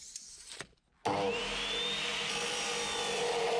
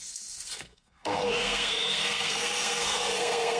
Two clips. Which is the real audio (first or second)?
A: first